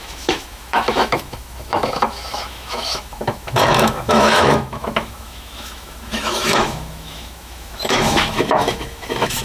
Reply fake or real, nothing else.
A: fake